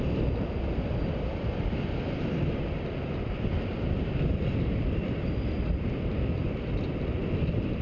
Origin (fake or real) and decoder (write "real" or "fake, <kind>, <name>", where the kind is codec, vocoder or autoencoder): real